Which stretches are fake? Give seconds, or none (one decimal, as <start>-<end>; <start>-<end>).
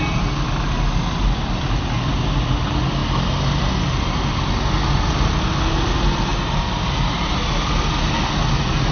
none